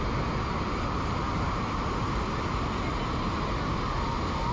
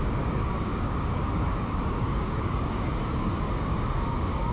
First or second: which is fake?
second